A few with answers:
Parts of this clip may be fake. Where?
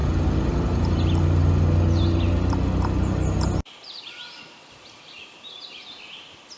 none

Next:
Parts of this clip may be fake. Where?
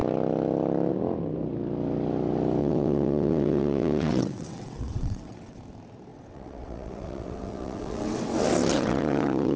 2.6-5.6 (vocoder, WaveNeXt); 6.1-8.2; 8.7-9.6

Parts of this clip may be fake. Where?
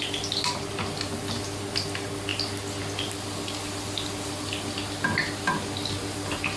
none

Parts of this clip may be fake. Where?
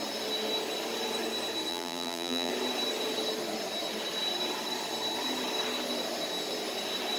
1.7-2.5 (vocoder, BigVGAN v2)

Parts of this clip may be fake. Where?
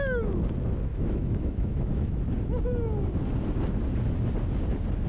0.9-2.2 (autoencoder, DAC-VAE)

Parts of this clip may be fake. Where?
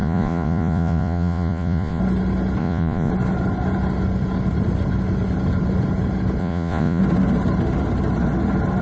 0.0-2.0 (vocoder, Vocos); 2.6-3.1; 6.4-7.0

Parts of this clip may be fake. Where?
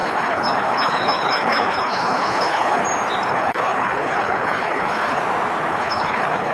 0.0-2.8 (codec, HILCodec); 3.3-5.2; 5.7-6.5